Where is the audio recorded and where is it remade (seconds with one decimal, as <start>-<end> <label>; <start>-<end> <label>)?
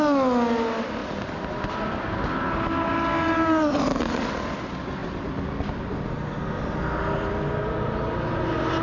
0.0-8.8 recorded